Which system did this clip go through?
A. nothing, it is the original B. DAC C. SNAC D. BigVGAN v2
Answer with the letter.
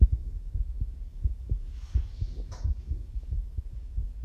B